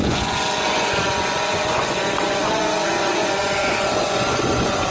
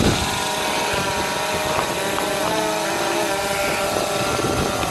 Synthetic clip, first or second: first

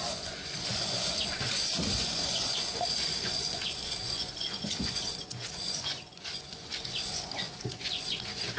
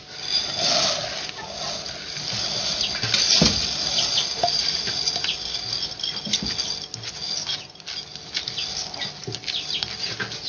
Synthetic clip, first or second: first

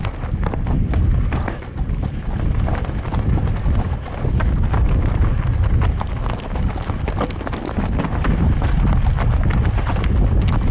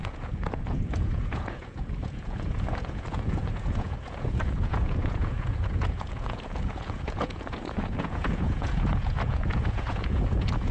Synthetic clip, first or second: second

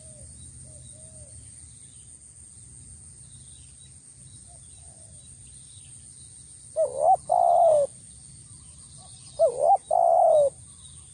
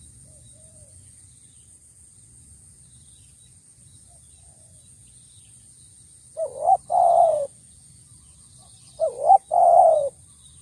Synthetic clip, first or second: second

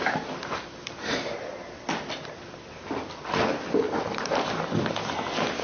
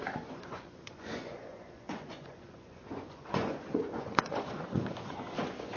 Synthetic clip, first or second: second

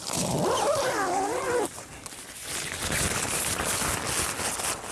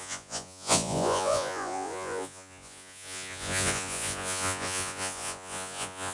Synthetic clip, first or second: second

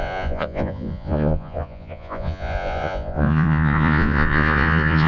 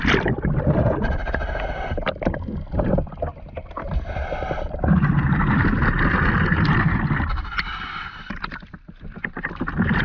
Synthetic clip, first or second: first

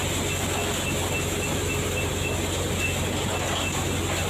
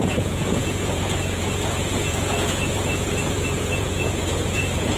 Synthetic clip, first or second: second